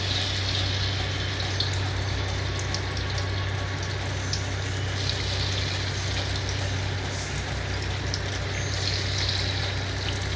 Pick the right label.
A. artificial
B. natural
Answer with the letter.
B